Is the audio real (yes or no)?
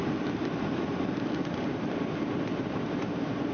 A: yes